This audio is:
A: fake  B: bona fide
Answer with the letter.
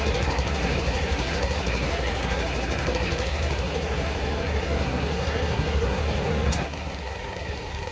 A